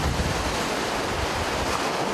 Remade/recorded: recorded